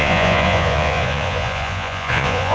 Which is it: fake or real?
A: fake